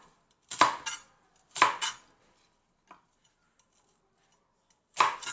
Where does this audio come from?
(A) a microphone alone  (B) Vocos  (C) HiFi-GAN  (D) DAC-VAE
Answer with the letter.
A